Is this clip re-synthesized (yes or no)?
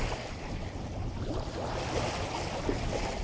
no